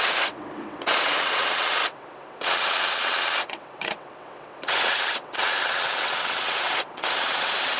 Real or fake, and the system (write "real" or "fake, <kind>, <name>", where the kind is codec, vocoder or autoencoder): fake, vocoder, WaveNeXt